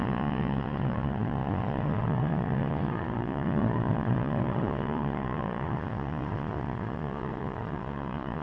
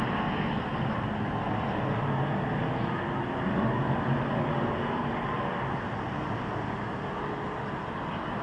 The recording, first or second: second